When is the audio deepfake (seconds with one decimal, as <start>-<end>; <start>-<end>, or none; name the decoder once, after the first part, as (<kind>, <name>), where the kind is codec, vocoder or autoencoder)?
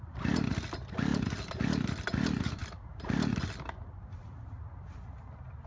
none